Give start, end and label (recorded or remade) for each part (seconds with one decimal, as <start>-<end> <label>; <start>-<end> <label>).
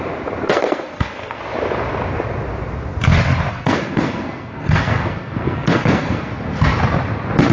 0.0-0.5 recorded; 0.5-1.4 remade; 1.4-3.5 recorded; 3.5-6.3 remade; 6.3-7.5 recorded